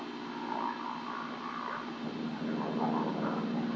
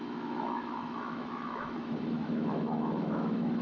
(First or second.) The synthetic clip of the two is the second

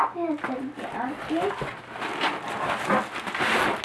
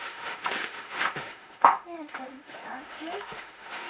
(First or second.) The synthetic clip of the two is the second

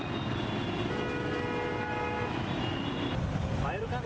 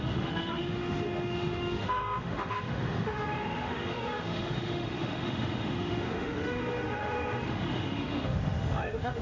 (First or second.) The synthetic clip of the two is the second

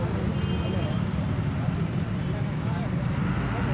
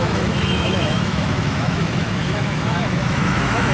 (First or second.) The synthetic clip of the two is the second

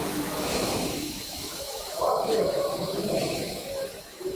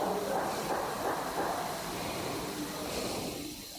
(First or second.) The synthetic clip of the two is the first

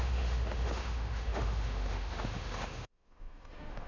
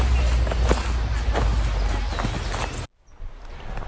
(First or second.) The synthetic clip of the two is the first